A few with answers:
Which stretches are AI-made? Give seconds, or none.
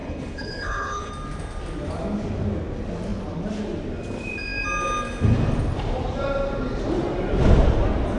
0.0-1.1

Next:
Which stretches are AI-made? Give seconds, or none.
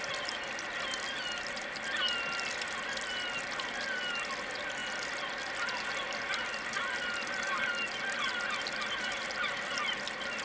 none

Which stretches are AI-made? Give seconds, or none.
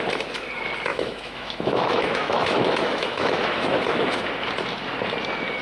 0.9-4.3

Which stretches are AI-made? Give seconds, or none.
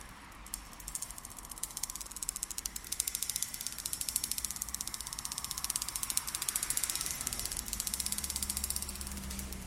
none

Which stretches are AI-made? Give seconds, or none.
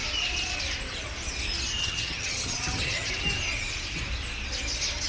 1.8-3.1